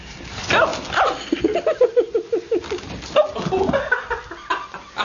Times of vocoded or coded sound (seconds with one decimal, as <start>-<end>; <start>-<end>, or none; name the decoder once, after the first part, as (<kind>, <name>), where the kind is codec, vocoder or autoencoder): none